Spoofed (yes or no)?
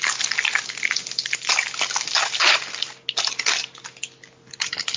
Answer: no